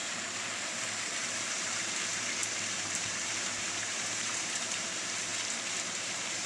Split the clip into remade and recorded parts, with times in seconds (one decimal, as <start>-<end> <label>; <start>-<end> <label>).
0.0-5.3 remade; 5.3-5.9 recorded; 5.9-6.5 remade